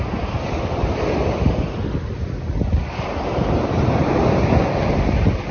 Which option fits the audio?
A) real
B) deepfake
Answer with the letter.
A